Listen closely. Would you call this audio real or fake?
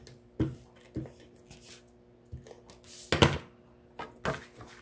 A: real